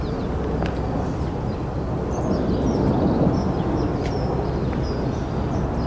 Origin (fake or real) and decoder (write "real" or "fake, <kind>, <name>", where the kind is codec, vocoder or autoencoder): real